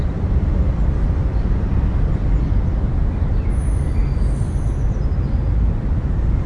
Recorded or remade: recorded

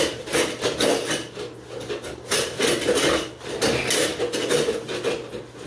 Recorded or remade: recorded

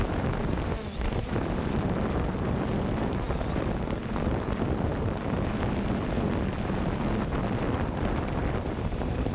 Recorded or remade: remade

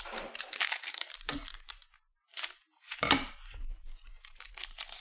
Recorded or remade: remade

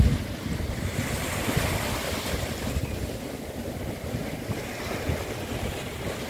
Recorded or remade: recorded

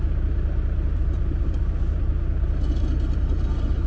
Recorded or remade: recorded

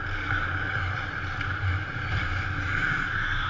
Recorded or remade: recorded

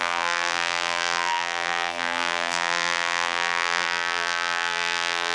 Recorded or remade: remade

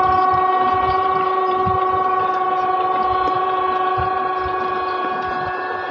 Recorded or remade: remade